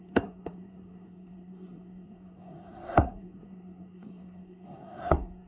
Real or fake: fake